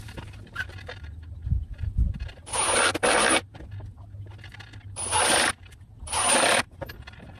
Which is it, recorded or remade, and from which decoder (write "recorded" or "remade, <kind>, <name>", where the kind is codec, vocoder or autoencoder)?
recorded